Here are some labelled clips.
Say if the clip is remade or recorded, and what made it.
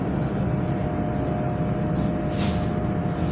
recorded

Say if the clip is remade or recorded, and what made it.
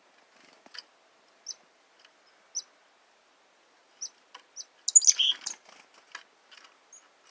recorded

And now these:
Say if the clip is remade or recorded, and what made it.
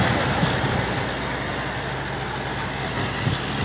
recorded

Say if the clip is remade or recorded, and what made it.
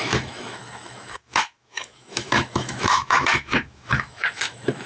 remade, autoencoder, DAC-VAE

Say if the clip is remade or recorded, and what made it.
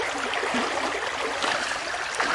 recorded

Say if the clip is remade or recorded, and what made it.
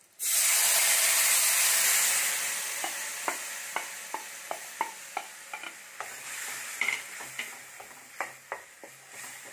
recorded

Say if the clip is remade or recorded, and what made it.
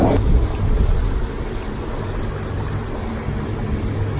recorded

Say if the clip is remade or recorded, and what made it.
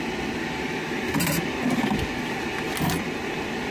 recorded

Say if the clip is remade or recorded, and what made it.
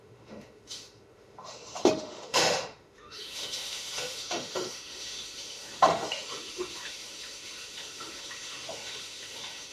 remade, autoencoder, DAC-VAE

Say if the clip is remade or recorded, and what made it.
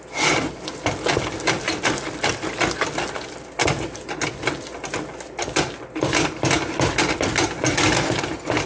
recorded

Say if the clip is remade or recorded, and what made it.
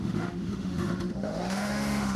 remade, autoencoder, DAC-VAE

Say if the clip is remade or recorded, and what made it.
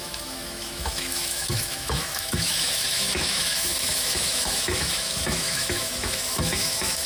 remade, autoencoder, DAC-VAE